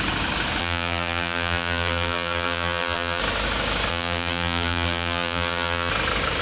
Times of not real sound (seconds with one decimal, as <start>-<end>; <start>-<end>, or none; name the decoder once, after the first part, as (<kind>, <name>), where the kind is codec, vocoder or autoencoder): 0.6-3.2 (vocoder, BigVGAN v2); 3.9-5.9